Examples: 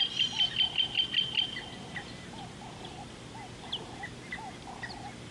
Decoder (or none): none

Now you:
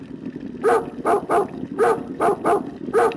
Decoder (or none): none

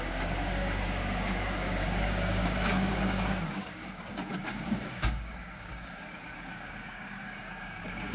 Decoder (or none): codec, DAC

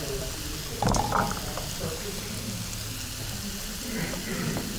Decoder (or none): none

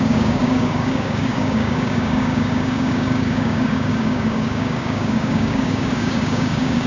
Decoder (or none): codec, DAC